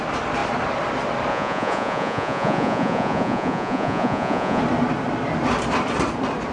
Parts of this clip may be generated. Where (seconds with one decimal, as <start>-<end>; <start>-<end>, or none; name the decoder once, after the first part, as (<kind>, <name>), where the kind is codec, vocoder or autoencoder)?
1.3-4.6 (vocoder, Vocos)